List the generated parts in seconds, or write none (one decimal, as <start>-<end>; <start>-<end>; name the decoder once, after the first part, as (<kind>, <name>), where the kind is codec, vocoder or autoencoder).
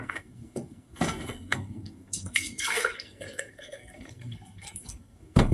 0.0-5.5 (codec, SNAC)